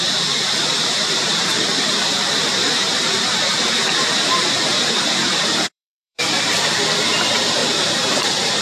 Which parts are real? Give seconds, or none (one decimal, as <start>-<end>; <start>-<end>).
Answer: 7.6-8.2